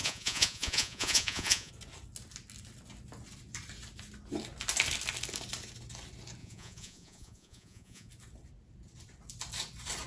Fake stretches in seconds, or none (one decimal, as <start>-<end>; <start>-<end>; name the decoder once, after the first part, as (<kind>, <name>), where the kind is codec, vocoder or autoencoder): 0.0-1.7 (vocoder, Vocos); 6.4-8.1